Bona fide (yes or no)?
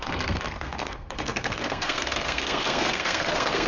no